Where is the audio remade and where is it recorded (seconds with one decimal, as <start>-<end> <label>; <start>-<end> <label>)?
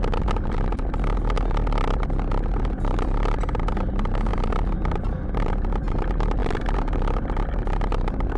0.0-8.4 recorded